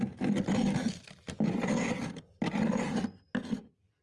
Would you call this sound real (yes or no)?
yes